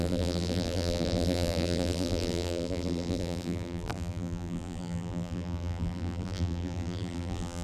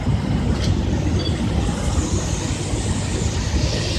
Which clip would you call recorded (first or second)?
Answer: second